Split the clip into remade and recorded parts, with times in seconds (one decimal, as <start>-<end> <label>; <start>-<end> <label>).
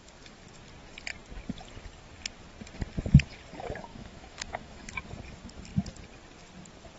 0.0-3.9 recorded; 3.9-5.0 remade; 5.0-7.0 recorded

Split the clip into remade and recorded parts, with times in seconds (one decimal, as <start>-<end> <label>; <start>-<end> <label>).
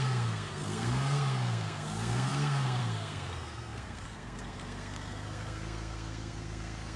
0.0-7.0 remade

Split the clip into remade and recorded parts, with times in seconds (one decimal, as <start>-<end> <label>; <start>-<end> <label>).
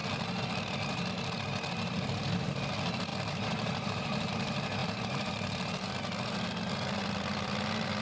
0.0-3.1 recorded; 3.1-4.3 remade; 4.3-4.8 recorded; 4.8-5.9 remade; 5.9-8.0 recorded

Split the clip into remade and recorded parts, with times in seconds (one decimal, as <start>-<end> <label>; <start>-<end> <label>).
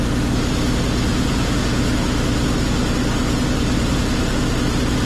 0.0-1.1 recorded; 1.1-1.8 remade; 1.8-5.1 recorded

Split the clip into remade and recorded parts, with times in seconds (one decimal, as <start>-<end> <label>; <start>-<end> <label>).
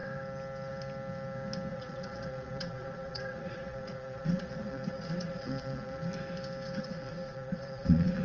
0.0-1.7 recorded; 1.7-6.0 remade; 6.0-6.8 recorded; 6.8-8.2 remade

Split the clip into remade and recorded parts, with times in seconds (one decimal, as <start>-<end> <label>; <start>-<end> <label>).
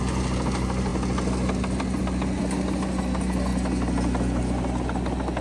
0.0-5.4 recorded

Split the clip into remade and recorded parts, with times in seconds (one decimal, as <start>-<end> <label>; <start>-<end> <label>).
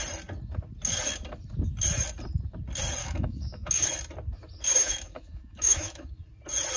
0.0-3.0 recorded; 3.0-3.9 remade; 3.9-4.8 recorded; 4.8-6.1 remade; 6.1-6.8 recorded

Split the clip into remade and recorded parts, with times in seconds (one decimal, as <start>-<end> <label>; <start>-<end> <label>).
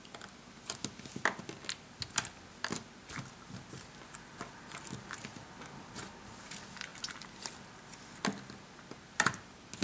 0.0-9.8 recorded